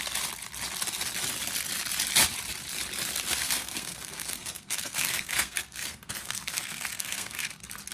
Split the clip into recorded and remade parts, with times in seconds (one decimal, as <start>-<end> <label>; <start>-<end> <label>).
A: 0.0-3.4 recorded; 3.4-7.5 remade; 7.5-7.9 recorded